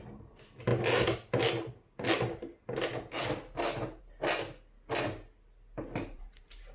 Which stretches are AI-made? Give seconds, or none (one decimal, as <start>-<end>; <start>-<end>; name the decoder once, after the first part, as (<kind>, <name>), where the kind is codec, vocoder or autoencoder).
none